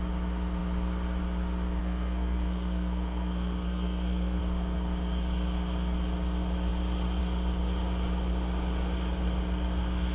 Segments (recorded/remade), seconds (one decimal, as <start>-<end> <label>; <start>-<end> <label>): 0.0-1.8 recorded; 1.8-4.4 remade; 4.4-10.1 recorded